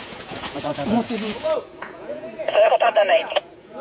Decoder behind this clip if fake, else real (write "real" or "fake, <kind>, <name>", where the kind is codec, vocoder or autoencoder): fake, vocoder, Vocos